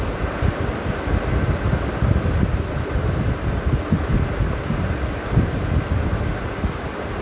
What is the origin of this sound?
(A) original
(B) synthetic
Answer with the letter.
A